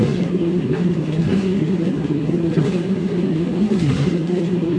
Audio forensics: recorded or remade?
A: remade